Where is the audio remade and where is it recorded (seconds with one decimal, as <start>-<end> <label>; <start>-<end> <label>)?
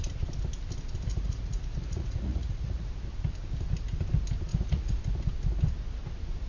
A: 0.0-1.1 recorded; 1.1-2.9 remade; 2.9-4.5 recorded; 4.5-5.0 remade; 5.0-6.5 recorded